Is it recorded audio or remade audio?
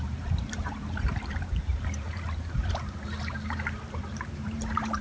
remade